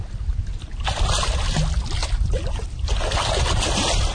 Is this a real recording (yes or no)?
yes